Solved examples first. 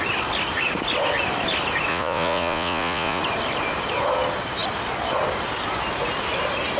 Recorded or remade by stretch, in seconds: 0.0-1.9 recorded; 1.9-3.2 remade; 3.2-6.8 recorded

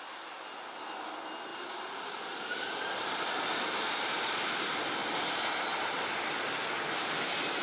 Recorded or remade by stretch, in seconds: 0.0-7.6 recorded

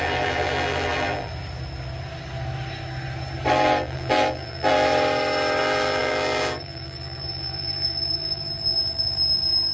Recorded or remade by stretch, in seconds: 0.0-1.3 remade; 1.3-3.5 recorded; 3.5-4.9 remade; 4.9-5.6 recorded; 5.6-9.7 remade

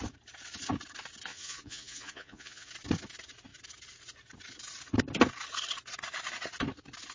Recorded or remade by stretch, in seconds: 0.0-1.3 recorded; 1.3-2.7 remade; 2.7-7.1 recorded